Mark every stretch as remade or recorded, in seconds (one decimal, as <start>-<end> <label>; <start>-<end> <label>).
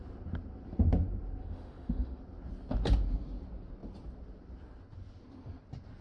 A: 0.0-1.4 recorded; 1.4-2.2 remade; 2.2-6.0 recorded